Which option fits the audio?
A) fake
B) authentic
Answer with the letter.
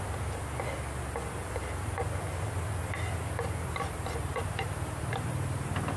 B